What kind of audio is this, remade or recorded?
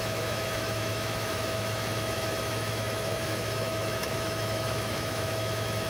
remade